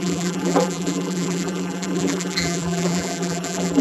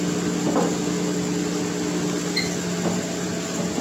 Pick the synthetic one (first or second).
first